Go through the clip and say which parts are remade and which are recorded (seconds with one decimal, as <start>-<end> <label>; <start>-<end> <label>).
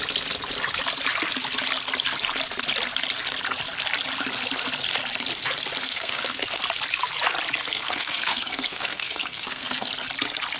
0.0-5.8 recorded; 5.8-6.6 remade; 6.6-7.7 recorded; 7.7-9.9 remade; 9.9-10.6 recorded